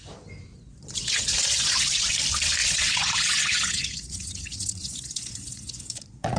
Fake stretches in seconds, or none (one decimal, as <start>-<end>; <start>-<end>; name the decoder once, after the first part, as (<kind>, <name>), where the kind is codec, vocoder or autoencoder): 0.5-2.1 (vocoder, Vocos); 2.6-6.4